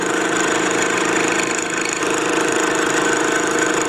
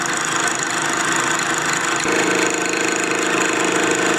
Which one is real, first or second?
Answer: second